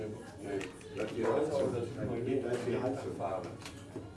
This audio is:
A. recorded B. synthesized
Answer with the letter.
A